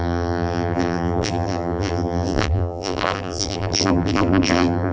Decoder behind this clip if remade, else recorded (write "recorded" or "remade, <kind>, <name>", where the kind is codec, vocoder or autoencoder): remade, vocoder, BigVGAN v2